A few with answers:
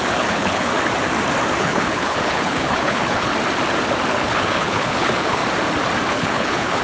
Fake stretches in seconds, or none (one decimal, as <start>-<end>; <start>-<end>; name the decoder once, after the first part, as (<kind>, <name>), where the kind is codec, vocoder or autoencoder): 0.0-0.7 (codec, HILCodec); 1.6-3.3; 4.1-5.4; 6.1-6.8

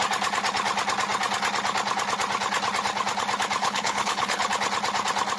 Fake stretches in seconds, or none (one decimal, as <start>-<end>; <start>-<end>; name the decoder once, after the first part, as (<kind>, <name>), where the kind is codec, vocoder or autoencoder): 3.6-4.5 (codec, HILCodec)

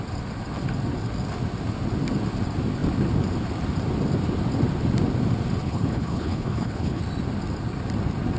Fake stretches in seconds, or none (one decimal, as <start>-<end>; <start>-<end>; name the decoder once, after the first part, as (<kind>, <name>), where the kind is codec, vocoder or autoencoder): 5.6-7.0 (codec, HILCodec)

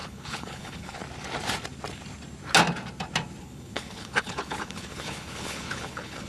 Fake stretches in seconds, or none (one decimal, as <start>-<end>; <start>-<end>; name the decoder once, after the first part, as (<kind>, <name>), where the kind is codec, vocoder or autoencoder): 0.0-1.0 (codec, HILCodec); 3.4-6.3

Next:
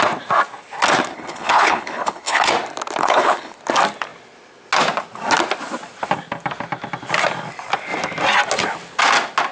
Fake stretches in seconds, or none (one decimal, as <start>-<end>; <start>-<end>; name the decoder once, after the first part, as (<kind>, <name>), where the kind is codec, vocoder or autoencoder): 1.1-2.5 (codec, HILCodec); 3.0-3.6

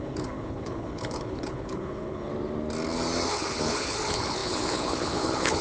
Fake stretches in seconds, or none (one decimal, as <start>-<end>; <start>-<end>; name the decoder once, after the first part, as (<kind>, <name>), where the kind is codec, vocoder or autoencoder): 0.0-2.3 (codec, HILCodec); 3.3-5.6

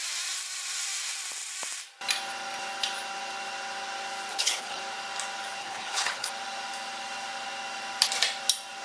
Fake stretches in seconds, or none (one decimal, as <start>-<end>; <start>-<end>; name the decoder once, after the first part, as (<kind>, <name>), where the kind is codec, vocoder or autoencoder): 4.3-4.8 (codec, HILCodec); 5.6-6.3